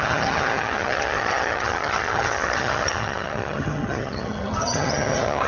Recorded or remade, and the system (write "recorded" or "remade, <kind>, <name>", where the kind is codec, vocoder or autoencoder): remade, vocoder, HiFi-GAN